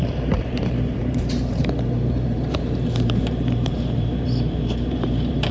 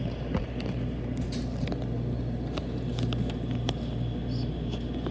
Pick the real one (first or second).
second